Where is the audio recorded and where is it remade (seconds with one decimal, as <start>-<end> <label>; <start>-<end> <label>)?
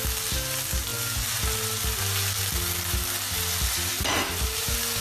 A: 0.0-5.0 recorded